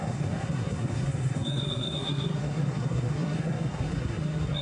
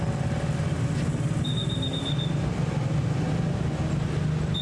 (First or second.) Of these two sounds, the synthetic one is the first